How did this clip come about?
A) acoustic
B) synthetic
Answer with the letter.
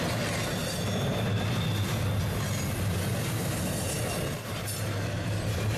A